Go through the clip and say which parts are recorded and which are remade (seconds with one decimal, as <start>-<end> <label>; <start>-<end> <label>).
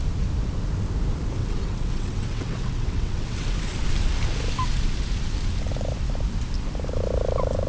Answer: 0.0-1.4 recorded; 1.4-3.7 remade; 3.7-7.7 recorded